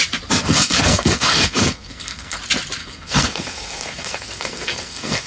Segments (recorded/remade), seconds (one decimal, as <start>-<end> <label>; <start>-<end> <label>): 0.0-0.4 recorded; 0.4-2.4 remade; 2.4-2.8 recorded; 2.8-5.3 remade